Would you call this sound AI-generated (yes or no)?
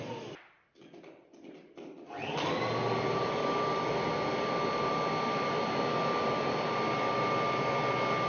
no